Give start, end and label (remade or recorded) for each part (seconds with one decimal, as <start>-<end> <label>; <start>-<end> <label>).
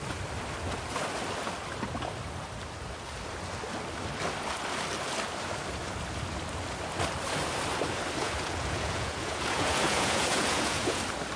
0.0-8.2 recorded; 8.2-11.0 remade; 11.0-11.4 recorded